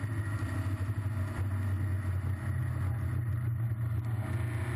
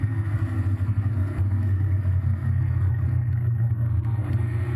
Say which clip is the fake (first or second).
second